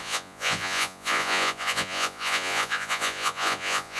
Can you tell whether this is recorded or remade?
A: remade